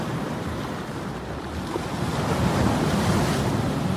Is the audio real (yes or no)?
yes